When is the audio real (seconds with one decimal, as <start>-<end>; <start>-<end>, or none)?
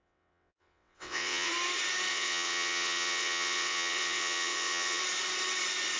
1.5-2.1; 5.0-6.0